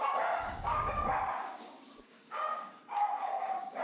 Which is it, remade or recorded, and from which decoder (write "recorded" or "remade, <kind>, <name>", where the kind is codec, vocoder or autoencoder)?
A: remade, codec, DAC